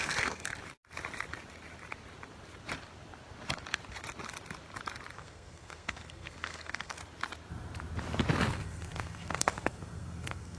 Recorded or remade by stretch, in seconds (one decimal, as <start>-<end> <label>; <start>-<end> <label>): 0.0-0.5 remade; 0.5-5.1 recorded; 5.1-7.0 remade; 7.0-8.5 recorded; 8.5-10.6 remade